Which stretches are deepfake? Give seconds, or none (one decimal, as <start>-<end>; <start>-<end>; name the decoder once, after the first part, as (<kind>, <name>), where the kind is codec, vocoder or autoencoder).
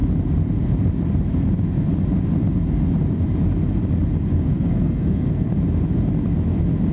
4.5-5.5 (codec, SNAC)